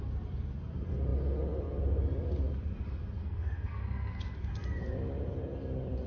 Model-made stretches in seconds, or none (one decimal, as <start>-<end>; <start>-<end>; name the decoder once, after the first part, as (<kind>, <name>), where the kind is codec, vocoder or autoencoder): 3.2-4.2 (codec, SNAC)